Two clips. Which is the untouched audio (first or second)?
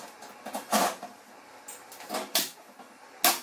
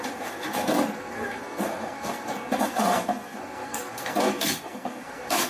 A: first